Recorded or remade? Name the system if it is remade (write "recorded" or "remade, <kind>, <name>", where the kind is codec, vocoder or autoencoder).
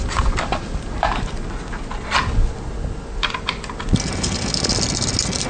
recorded